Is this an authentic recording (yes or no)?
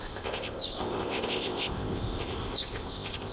no